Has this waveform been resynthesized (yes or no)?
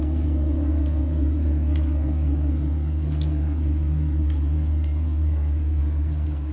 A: yes